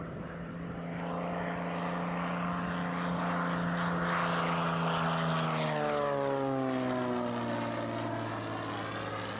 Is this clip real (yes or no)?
yes